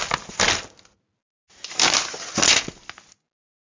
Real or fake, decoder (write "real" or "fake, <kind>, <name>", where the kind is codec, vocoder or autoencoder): real